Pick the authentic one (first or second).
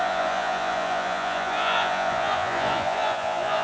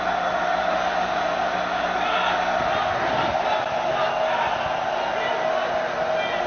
second